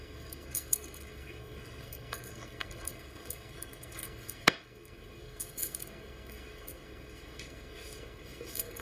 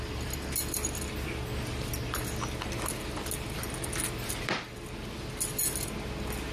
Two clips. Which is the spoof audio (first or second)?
first